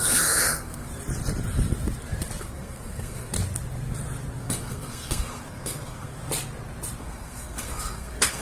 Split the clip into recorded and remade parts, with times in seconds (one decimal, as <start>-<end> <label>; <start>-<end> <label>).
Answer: 0.0-0.9 remade; 0.9-2.4 recorded; 2.4-3.3 remade; 3.3-4.4 recorded; 4.4-6.1 remade; 6.1-7.0 recorded; 7.0-8.4 remade